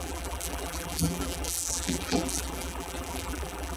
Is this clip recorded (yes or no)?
no